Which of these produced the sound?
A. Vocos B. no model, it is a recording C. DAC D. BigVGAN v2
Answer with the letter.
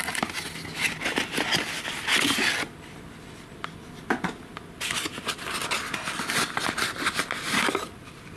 B